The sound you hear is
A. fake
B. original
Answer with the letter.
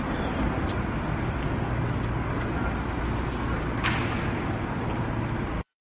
B